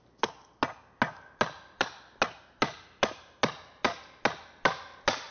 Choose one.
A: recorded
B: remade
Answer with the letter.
A